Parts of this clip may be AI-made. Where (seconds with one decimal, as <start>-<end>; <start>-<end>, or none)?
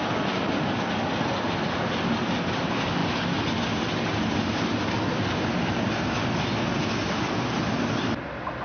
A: none